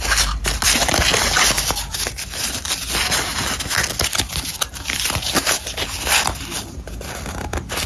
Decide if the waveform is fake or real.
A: real